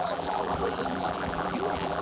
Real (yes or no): no